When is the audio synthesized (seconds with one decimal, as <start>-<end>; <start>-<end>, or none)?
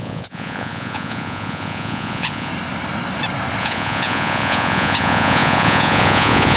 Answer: 0.0-2.5; 3.6-6.6